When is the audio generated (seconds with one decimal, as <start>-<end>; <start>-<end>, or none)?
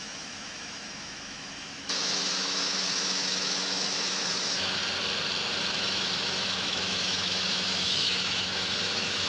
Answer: 0.0-4.8; 5.6-9.3